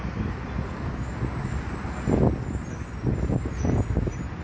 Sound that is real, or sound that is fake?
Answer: real